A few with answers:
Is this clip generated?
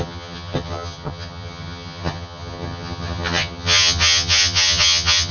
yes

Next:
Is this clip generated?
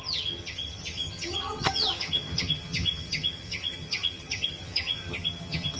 yes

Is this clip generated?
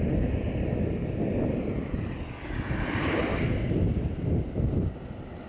no